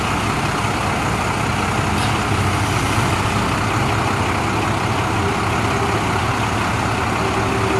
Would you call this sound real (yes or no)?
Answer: yes